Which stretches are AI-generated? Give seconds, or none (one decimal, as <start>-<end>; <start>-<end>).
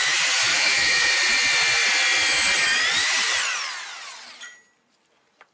0.5-1.1